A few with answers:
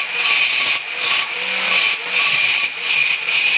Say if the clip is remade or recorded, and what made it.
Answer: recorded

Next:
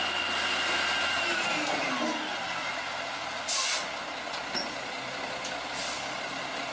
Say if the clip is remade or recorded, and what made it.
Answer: recorded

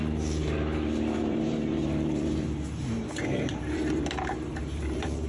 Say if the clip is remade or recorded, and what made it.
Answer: remade, vocoder, BigVGAN v2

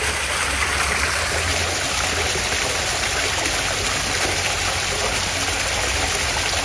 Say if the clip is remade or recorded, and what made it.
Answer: recorded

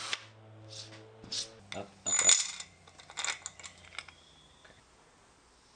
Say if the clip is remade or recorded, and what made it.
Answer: recorded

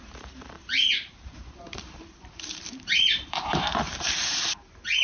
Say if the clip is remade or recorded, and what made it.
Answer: remade, vocoder, BigVGAN v2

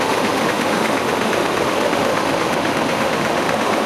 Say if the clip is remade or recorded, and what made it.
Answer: remade, autoencoder, DAC-VAE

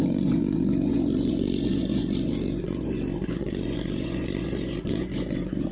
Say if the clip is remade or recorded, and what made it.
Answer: remade, vocoder, Vocos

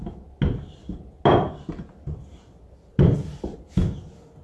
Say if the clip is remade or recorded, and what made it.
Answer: recorded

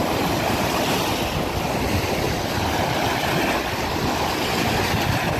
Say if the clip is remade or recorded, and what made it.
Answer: recorded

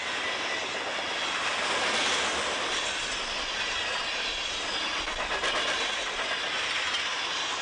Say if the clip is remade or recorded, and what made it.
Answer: recorded